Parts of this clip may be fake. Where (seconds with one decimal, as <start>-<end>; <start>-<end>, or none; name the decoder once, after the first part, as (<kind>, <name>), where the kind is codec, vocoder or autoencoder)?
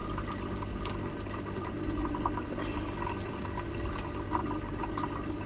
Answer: none